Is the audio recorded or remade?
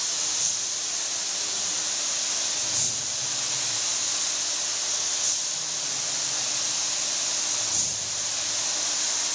recorded